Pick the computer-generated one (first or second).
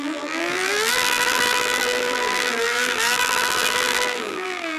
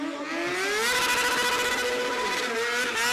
first